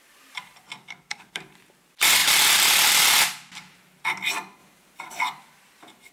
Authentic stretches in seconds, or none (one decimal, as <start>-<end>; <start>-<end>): 0.0-0.8; 1.4-6.1